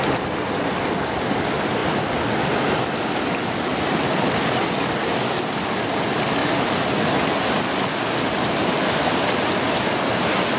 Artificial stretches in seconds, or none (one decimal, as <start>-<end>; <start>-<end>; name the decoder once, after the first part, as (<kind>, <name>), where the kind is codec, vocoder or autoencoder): none